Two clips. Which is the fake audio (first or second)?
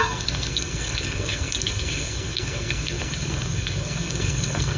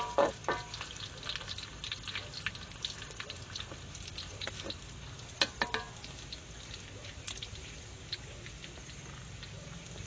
first